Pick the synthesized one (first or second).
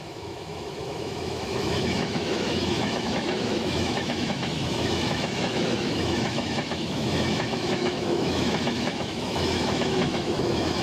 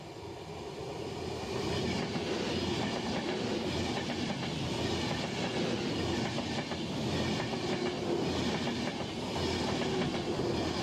first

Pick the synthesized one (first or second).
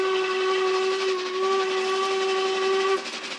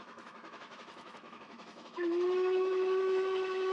second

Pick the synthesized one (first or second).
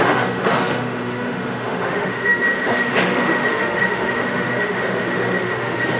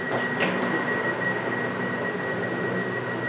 first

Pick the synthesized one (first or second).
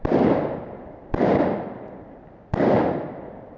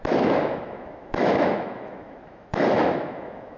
second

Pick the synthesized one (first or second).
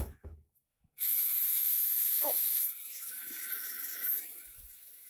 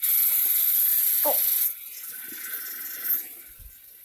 first